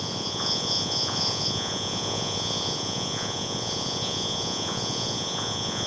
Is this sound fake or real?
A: fake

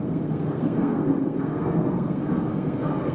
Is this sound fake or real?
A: fake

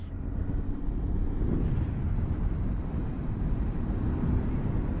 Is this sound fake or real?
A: real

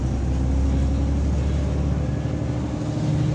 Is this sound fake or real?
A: real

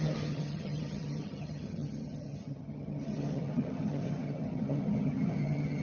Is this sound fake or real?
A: fake